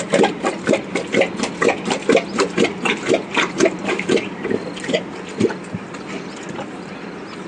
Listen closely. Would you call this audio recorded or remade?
recorded